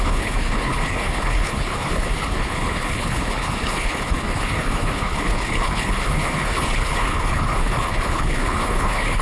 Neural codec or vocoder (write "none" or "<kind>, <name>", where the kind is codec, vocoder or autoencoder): codec, HILCodec